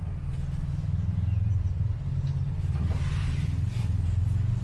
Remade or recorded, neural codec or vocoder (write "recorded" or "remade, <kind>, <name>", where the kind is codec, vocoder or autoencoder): recorded